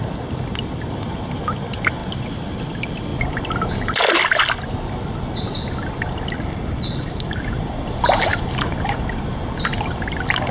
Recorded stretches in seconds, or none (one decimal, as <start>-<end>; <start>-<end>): 0.0-10.5